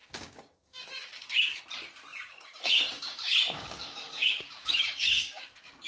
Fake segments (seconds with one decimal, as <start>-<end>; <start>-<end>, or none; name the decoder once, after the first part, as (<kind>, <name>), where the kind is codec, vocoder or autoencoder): 0.0-1.6 (codec, DAC); 2.1-5.9